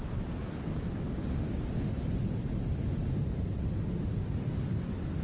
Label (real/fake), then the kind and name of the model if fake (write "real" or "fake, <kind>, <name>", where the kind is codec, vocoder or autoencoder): real